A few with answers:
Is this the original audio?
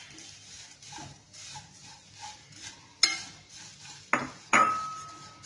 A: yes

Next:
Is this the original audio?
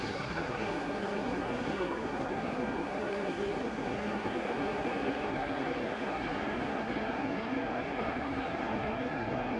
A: no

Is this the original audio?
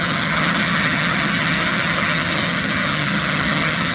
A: no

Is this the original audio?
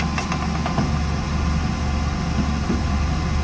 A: yes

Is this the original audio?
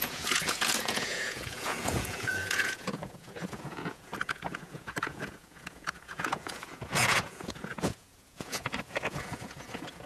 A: no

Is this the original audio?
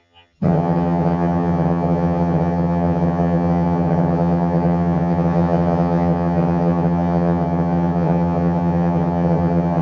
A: no